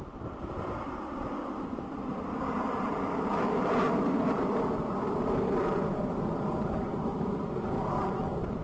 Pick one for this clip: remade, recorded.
remade